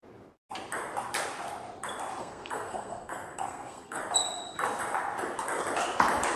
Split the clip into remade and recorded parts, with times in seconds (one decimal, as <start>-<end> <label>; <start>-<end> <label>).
0.0-2.2 recorded; 2.2-4.0 remade; 4.0-6.4 recorded